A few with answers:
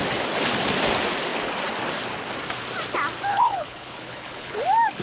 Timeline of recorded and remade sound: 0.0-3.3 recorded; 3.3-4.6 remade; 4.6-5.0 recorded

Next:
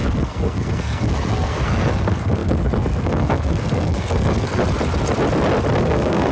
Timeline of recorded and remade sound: 0.0-4.6 remade; 4.6-5.8 recorded; 5.8-6.3 remade

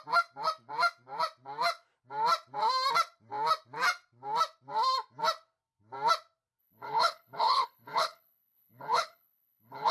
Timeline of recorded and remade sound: 0.0-6.6 recorded; 6.6-9.9 remade

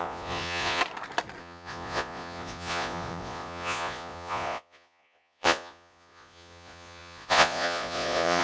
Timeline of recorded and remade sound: 0.0-0.8 remade; 0.8-1.4 recorded; 1.4-8.4 remade

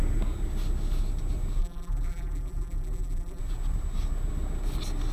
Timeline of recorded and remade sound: 0.0-1.6 recorded; 1.6-3.4 remade; 3.4-5.1 recorded

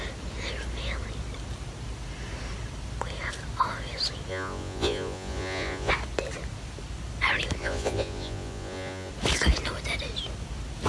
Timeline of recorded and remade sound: 0.0-4.3 recorded; 4.3-5.9 remade; 5.9-7.6 recorded; 7.6-9.1 remade; 9.1-10.9 recorded

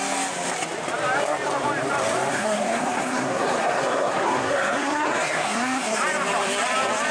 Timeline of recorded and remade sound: 0.0-2.3 recorded; 2.3-6.0 remade; 6.0-7.1 recorded

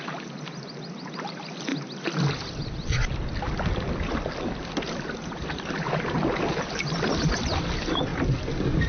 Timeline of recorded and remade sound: 0.0-8.9 recorded